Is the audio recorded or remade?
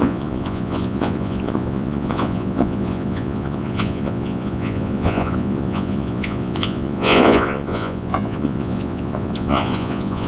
remade